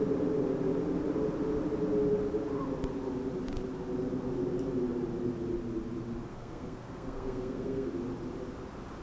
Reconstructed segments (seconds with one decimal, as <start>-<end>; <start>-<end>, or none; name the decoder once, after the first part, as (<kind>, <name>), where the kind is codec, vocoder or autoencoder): 6.3-7.9 (codec, SNAC)